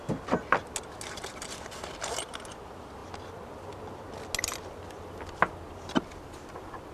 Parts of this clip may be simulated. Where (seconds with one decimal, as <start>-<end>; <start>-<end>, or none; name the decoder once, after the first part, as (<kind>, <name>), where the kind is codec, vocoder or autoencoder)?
none